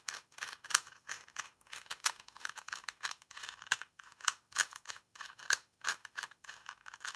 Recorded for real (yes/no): no